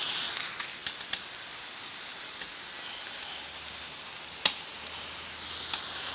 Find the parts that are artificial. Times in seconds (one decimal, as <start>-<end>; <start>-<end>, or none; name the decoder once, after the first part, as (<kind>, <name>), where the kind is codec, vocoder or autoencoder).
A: none